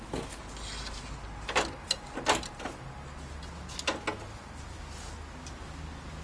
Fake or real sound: real